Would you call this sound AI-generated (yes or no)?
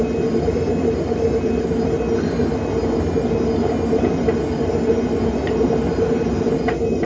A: no